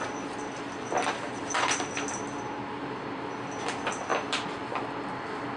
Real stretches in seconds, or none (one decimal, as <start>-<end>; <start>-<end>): 0.0-4.1; 4.7-5.6